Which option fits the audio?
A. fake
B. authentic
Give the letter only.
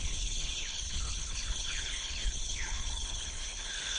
A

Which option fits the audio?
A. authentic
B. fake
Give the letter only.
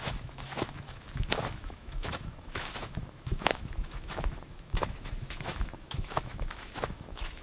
B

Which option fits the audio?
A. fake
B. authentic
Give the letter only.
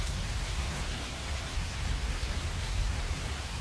A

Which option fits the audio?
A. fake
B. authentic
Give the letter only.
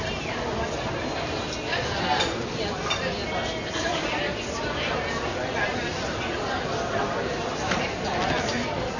B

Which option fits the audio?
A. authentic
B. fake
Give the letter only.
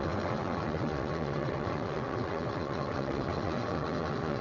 B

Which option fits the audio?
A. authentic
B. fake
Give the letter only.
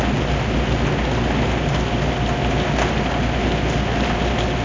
A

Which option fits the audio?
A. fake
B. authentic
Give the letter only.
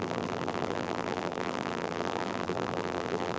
A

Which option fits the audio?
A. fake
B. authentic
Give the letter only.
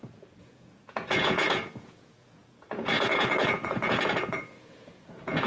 A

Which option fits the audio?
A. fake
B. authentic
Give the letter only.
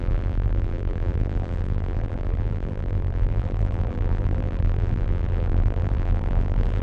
A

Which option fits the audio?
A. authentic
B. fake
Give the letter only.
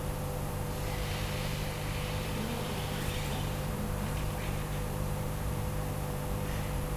B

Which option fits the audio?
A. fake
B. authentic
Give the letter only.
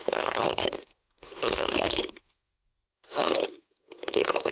A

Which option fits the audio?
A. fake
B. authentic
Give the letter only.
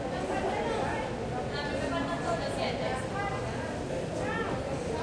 B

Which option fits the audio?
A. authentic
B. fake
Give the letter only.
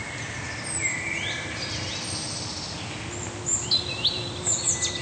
A